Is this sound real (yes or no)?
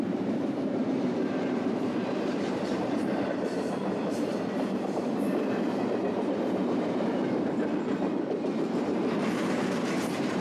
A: no